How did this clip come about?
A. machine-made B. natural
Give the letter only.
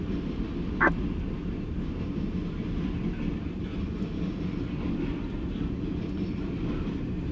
B